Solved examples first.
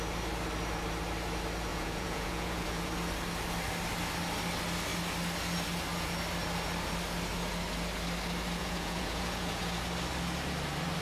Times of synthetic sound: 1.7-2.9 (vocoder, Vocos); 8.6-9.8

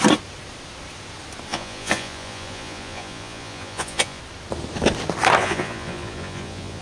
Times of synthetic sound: 1.5-4.2 (vocoder, Vocos); 5.4-6.8

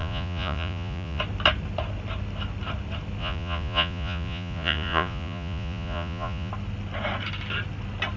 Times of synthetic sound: 0.0-1.2 (vocoder, Vocos); 3.2-6.5

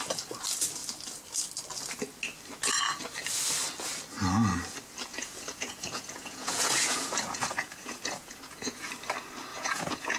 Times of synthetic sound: 5.1-8.9 (vocoder, Vocos); 9.5-10.2

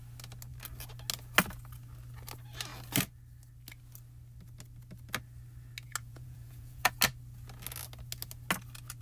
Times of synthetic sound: 6.0-6.9 (vocoder, Vocos)

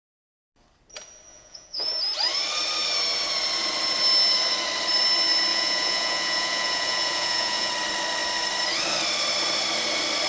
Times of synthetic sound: 1.3-1.9 (vocoder, Vocos); 5.5-7.7

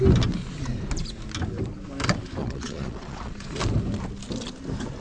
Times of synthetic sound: 2.4-3.6 (vocoder, Vocos)